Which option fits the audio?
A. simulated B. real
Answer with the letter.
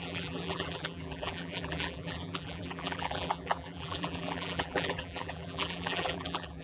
A